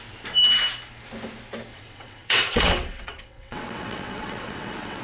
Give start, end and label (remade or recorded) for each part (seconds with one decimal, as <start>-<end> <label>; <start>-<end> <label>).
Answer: 0.0-1.7 recorded; 1.7-5.0 remade